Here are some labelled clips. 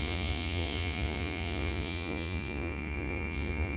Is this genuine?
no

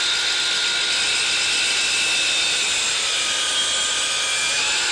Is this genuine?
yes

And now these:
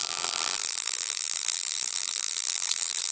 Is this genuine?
no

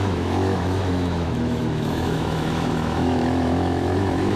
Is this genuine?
no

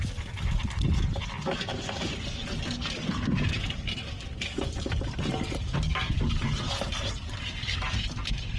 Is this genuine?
yes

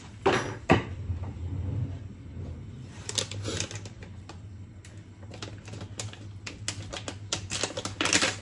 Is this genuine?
yes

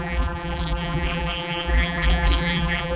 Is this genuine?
no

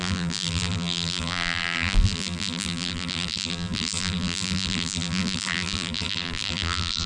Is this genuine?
no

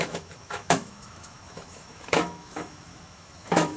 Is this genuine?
no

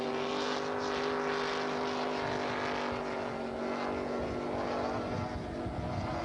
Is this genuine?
yes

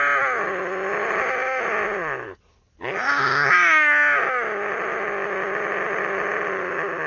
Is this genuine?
yes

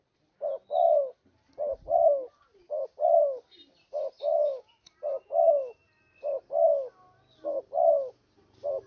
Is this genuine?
yes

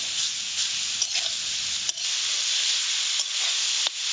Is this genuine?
yes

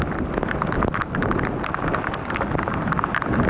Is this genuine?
yes